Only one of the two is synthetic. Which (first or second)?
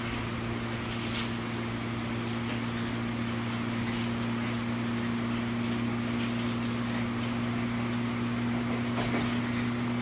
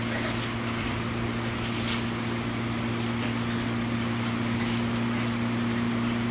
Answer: second